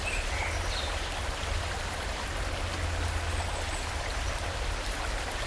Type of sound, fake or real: real